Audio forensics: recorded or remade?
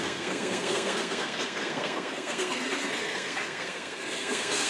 remade